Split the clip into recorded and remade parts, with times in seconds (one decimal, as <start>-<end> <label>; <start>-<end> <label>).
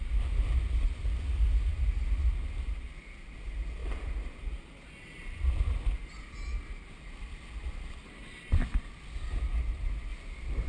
0.0-3.8 recorded; 3.8-8.9 remade; 8.9-10.1 recorded; 10.1-10.7 remade